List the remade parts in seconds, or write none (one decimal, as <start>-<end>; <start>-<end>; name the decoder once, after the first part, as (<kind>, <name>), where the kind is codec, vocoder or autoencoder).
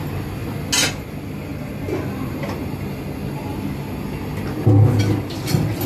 none